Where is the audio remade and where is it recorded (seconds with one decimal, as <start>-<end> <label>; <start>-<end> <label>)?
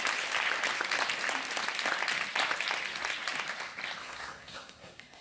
0.0-4.0 recorded; 4.0-5.2 remade